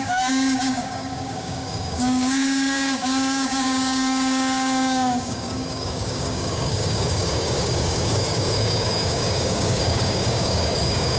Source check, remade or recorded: remade